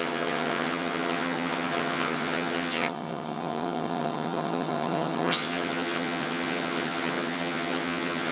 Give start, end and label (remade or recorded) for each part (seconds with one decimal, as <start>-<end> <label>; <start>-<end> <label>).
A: 0.0-8.3 remade